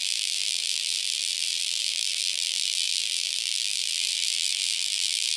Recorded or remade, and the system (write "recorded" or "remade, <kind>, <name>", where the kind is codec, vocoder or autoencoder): remade, vocoder, BigVGAN v2